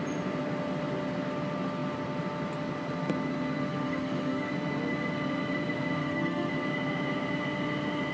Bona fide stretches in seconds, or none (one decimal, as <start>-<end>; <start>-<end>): 0.0-3.7; 4.5-6.0; 6.5-8.1